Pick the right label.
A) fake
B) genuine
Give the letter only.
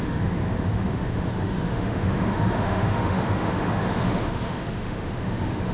A